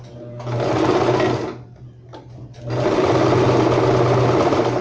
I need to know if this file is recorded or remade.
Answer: recorded